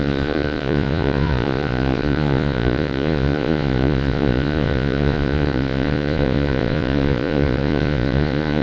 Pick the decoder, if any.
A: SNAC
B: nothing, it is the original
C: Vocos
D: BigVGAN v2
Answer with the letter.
C